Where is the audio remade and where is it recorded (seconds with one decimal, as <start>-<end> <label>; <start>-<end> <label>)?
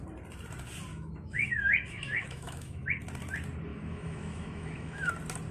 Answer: 0.0-0.9 recorded; 0.9-3.0 remade; 3.0-3.7 recorded; 3.7-5.1 remade; 5.1-5.5 recorded